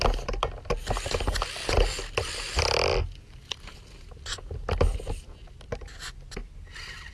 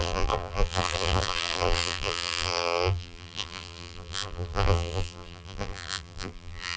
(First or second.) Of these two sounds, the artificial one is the second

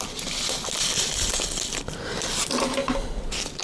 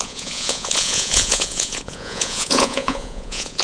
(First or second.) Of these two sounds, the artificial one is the second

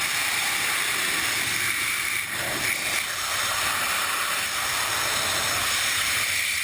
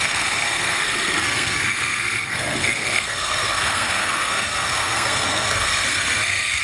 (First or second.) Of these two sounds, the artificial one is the second